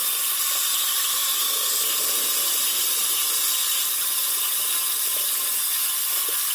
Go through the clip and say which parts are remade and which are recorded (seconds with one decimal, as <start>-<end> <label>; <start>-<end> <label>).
0.0-6.5 recorded